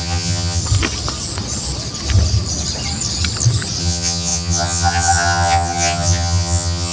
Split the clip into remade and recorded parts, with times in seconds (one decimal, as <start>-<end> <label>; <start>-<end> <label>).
0.0-0.6 remade; 0.6-3.8 recorded; 3.8-6.9 remade